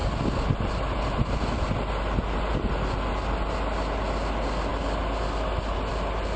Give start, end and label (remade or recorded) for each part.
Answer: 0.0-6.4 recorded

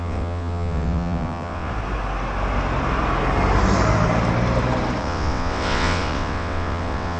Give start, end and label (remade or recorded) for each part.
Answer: 0.0-1.7 remade; 1.7-5.0 recorded; 5.0-7.2 remade

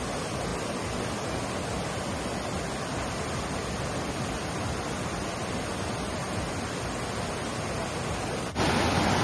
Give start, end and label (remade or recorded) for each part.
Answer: 0.0-9.2 recorded

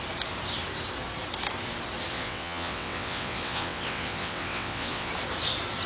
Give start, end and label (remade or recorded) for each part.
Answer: 0.0-2.1 recorded; 2.1-5.1 remade; 5.1-5.9 recorded

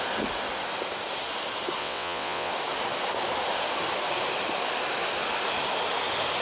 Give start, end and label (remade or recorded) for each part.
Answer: 0.0-1.8 recorded; 1.8-2.5 remade; 2.5-6.4 recorded